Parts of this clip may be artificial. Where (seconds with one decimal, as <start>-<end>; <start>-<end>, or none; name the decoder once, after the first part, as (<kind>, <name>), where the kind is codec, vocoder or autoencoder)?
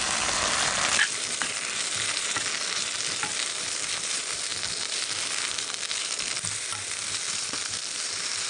0.0-4.5 (vocoder, BigVGAN v2); 5.5-8.5